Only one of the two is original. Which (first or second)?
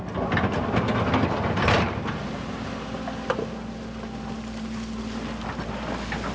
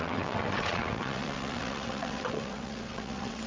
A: first